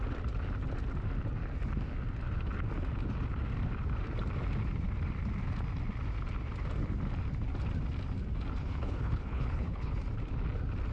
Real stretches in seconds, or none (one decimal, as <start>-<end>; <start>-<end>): 0.0-8.6; 9.9-10.9